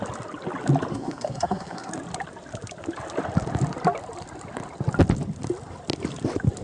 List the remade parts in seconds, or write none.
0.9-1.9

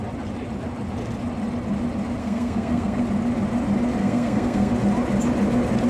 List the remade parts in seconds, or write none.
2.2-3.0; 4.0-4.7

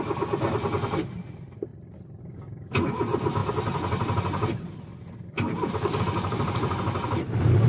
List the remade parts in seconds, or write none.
none